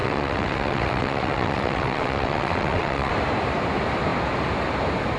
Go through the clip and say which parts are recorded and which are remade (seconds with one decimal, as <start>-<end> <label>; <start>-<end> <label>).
0.0-3.1 remade; 3.1-5.2 recorded